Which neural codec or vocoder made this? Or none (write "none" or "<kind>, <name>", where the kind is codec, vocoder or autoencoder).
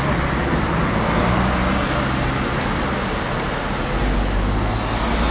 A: none